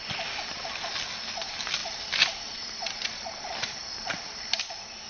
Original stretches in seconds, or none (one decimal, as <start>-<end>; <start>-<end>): 0.0-5.1